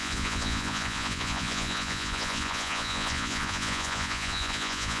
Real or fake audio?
fake